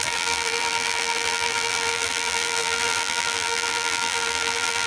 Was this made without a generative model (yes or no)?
no